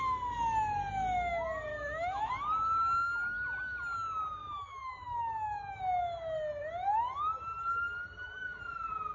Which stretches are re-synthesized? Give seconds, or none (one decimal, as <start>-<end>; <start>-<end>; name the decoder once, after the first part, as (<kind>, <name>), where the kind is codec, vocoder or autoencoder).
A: 1.7-2.3 (autoencoder, DAC-VAE); 4.4-5.8